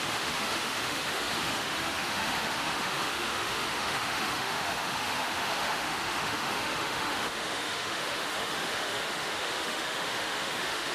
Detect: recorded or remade remade